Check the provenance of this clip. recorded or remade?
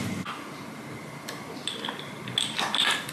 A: recorded